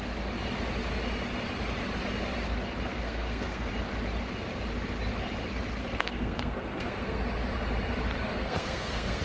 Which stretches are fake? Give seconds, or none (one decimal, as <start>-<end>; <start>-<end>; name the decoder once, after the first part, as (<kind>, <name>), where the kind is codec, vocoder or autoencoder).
2.9-3.7 (codec, SNAC); 5.8-7.2; 8.3-9.2